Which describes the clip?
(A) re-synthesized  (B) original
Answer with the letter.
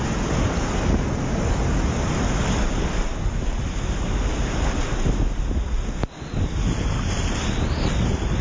B